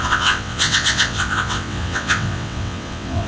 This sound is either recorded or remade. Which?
remade